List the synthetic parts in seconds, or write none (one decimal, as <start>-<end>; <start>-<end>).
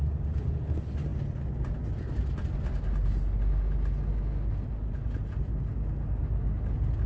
none